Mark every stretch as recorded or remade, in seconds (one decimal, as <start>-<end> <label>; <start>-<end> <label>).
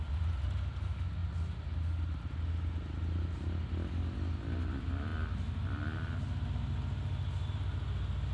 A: 0.0-8.3 recorded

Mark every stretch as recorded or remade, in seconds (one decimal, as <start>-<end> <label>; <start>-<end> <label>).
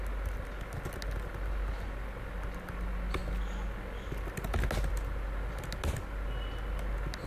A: 0.0-7.3 recorded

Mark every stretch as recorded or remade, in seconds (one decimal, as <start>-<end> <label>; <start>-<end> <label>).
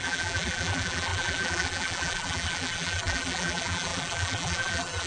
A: 0.0-5.1 remade